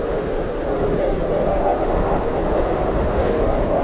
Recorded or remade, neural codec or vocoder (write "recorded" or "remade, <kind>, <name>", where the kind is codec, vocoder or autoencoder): remade, autoencoder, DAC-VAE